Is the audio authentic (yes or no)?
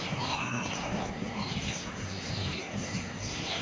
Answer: no